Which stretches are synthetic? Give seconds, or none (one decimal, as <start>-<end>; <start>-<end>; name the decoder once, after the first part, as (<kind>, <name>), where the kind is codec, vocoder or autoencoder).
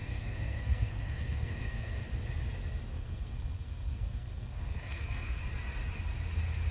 0.0-2.0 (codec, SNAC); 2.9-5.4